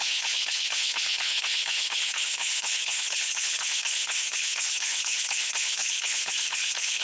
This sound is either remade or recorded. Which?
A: remade